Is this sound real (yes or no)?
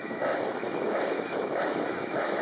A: no